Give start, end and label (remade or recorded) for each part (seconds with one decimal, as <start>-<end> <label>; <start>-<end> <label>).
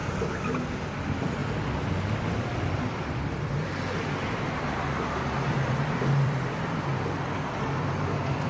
0.0-0.6 recorded; 0.6-1.4 remade; 1.4-5.5 recorded; 5.5-6.9 remade; 6.9-7.6 recorded; 7.6-8.5 remade